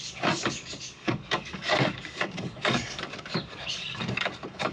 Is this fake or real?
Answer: fake